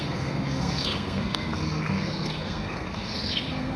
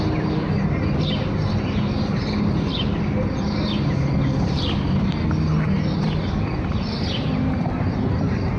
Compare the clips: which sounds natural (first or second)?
second